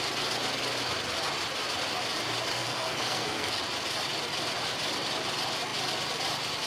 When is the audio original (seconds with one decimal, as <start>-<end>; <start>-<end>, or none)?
0.0-2.5; 3.6-6.7

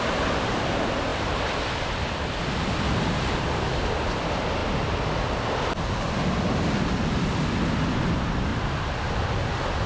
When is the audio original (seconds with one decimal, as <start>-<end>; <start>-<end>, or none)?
0.0-1.1; 2.4-8.5; 9.4-9.9

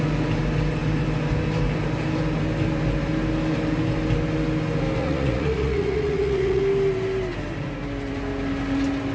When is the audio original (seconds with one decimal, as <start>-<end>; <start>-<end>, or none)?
0.0-5.0; 6.6-9.1

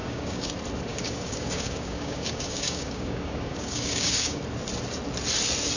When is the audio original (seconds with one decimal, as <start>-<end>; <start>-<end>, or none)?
0.5-0.9; 4.4-5.8

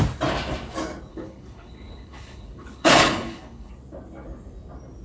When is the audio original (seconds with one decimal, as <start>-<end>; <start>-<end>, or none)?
0.0-1.1; 3.7-5.0